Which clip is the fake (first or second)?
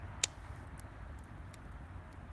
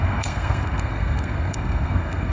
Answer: second